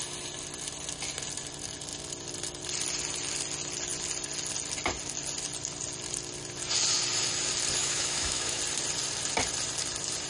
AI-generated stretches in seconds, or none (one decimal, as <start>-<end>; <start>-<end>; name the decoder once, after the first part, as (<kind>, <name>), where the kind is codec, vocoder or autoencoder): 7.8-8.6 (autoencoder, DAC-VAE)